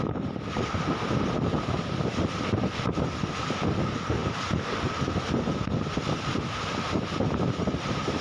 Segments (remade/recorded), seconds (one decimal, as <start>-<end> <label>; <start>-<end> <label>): 0.0-8.2 remade